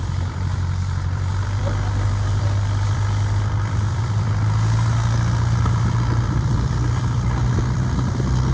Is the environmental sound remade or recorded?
remade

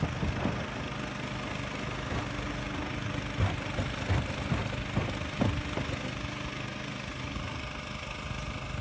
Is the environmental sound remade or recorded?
recorded